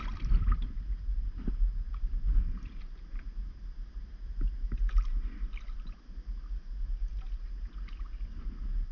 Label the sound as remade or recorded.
recorded